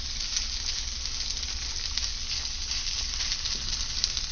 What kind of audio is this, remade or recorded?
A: recorded